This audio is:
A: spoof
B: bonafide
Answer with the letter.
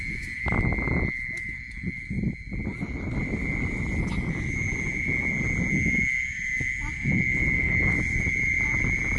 B